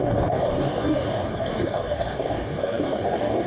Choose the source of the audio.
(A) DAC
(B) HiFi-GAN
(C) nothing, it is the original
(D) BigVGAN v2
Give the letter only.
A